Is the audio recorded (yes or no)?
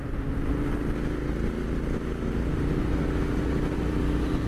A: yes